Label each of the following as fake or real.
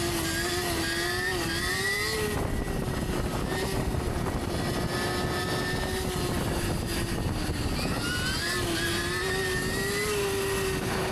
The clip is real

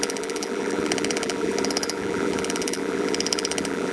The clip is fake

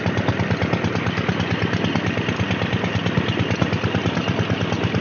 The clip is real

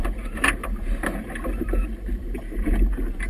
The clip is fake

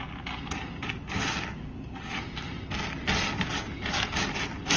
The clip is real